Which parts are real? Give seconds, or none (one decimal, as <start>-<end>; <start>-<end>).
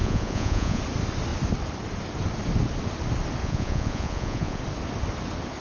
0.8-3.4; 4.6-5.6